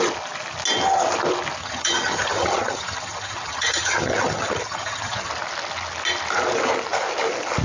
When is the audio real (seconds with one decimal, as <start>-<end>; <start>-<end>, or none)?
0.0-1.6; 5.3-7.6

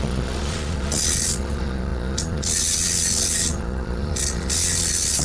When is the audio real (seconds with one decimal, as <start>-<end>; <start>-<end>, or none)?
none

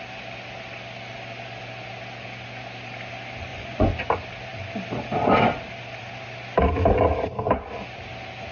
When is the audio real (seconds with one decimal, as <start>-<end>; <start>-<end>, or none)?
0.0-3.5; 4.0-8.5

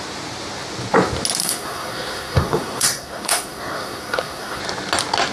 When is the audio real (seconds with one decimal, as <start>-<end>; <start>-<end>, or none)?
0.0-1.4; 4.6-5.3

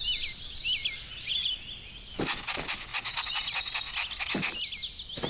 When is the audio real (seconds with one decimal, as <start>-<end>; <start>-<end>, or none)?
0.0-2.9; 3.4-5.3